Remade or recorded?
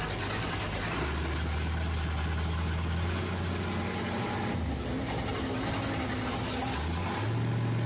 recorded